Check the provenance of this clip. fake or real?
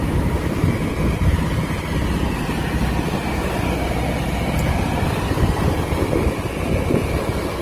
real